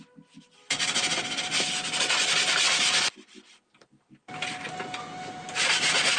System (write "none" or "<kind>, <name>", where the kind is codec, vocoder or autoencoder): none